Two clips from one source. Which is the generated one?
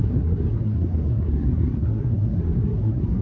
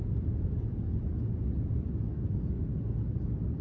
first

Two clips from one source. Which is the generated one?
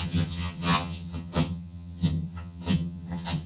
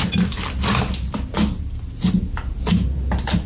first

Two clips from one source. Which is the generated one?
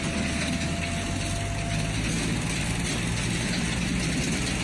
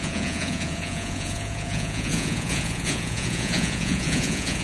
second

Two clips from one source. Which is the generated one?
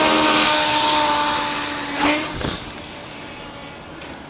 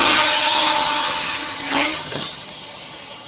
second